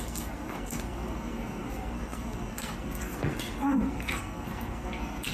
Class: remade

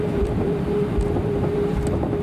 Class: remade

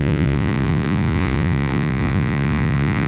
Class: remade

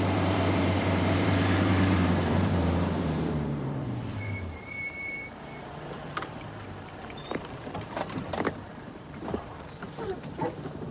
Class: remade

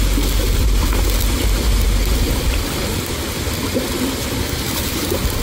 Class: recorded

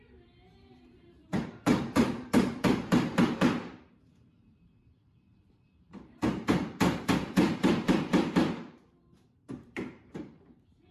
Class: remade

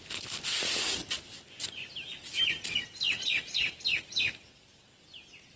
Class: recorded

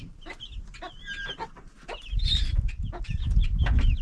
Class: recorded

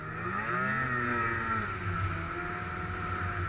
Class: recorded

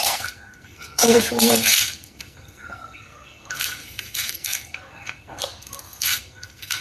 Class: remade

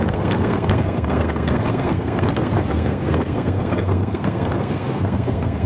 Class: remade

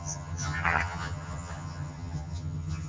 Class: remade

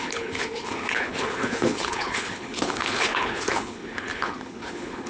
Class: remade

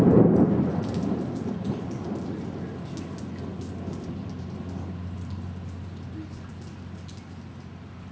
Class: recorded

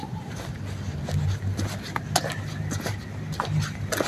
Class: recorded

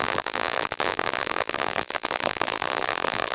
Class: remade